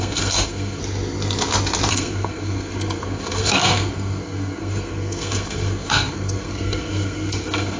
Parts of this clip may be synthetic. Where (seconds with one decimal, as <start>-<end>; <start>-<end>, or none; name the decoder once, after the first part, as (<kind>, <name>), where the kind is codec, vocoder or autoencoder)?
0.0-0.8 (codec, SNAC); 1.9-7.8